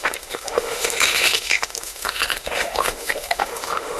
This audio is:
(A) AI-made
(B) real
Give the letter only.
A